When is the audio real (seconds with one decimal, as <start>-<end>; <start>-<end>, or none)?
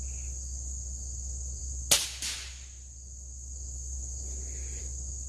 0.0-5.3